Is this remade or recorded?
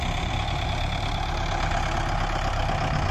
recorded